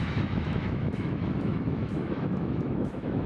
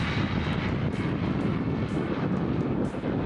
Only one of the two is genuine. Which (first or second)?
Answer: second